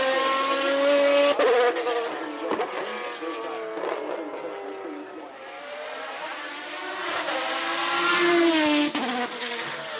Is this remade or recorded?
recorded